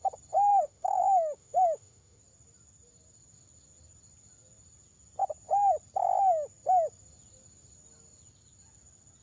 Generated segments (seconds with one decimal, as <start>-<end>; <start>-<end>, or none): 0.5-2.2